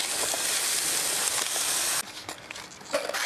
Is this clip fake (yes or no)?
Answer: no